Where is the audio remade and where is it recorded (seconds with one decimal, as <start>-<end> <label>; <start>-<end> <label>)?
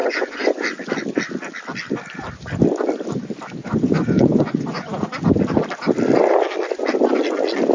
0.0-0.6 remade; 0.6-3.6 recorded; 3.6-5.2 remade; 5.2-7.7 recorded